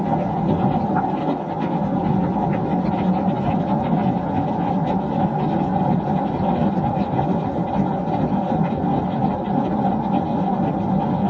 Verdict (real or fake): real